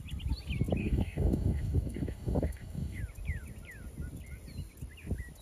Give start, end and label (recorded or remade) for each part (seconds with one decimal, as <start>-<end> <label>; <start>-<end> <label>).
0.0-0.8 recorded; 0.8-3.0 remade; 3.0-5.4 recorded